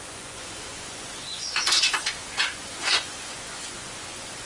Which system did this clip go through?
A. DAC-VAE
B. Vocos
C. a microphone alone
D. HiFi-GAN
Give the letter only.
B